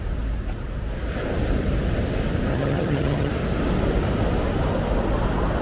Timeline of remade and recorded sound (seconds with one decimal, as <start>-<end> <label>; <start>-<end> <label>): 0.0-2.5 recorded; 2.5-3.3 remade; 3.3-5.6 recorded

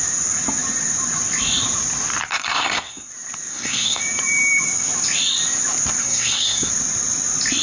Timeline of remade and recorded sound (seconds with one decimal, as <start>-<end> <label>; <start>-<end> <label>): 0.0-2.3 recorded; 2.3-3.1 remade; 3.1-3.5 recorded; 3.5-4.0 remade; 4.0-6.0 recorded; 6.0-6.7 remade; 6.7-7.6 recorded